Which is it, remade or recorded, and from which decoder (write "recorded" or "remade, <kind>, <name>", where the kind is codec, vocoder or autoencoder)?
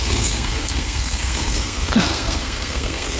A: remade, codec, SNAC